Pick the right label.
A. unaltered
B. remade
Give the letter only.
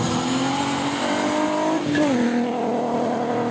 A